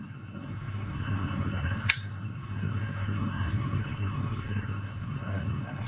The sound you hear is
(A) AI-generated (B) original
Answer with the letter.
A